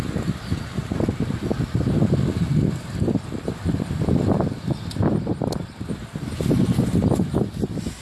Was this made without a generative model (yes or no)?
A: yes